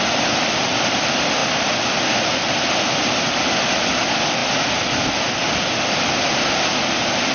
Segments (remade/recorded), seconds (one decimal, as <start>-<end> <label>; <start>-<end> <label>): 0.0-7.3 recorded

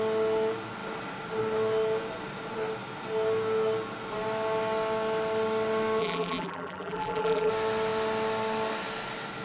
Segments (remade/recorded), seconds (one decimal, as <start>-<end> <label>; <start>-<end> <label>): 0.0-6.0 recorded; 6.0-7.5 remade; 7.5-9.4 recorded

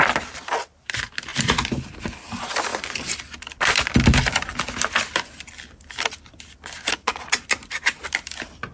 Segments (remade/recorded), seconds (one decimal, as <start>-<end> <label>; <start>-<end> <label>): 0.0-8.7 recorded

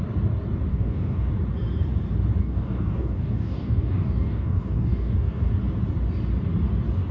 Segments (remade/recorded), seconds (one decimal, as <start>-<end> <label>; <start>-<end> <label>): 0.0-0.7 recorded; 0.7-1.3 remade; 1.3-2.4 recorded; 2.4-5.5 remade; 5.5-7.1 recorded

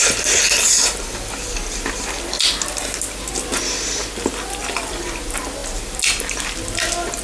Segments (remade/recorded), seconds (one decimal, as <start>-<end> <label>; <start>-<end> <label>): 0.0-7.2 recorded

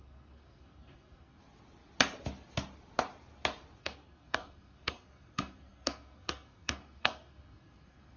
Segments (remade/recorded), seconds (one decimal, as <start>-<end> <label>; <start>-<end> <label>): 0.0-1.4 remade; 1.4-3.8 recorded; 3.8-8.2 remade